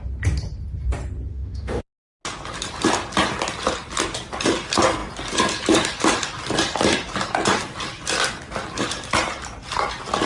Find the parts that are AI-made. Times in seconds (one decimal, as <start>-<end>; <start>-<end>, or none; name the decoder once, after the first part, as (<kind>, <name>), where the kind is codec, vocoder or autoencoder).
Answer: 1.3-1.8 (autoencoder, DAC-VAE)